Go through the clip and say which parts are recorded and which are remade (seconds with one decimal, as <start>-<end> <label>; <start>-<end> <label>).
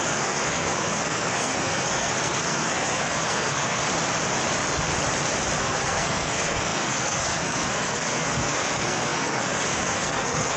0.0-3.8 remade; 3.8-5.6 recorded; 5.6-10.6 remade